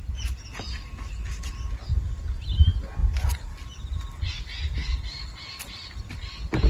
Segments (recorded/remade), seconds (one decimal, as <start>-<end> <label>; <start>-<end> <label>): 0.0-3.0 recorded; 3.0-3.5 remade; 3.5-6.7 recorded